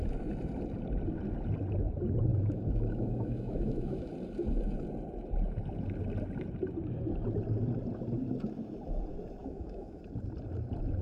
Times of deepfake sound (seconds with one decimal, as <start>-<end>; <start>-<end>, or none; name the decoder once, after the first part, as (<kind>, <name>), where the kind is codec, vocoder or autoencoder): 2.3-4.1 (autoencoder, DAC-VAE); 9.4-10.0